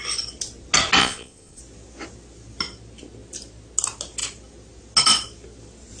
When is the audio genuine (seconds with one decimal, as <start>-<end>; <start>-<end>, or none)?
0.0-1.0; 1.6-6.0